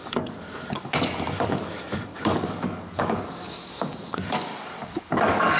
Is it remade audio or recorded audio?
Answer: remade